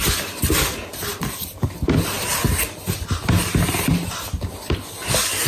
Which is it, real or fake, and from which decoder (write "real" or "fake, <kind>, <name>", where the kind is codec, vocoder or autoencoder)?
real